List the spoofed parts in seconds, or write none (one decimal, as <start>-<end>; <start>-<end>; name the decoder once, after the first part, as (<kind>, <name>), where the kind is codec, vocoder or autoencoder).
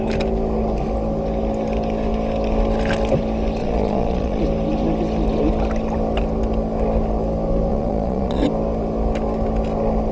3.6-4.4 (vocoder, Vocos); 7.7-8.4